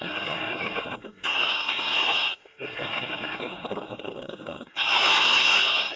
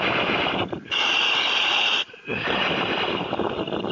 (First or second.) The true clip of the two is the second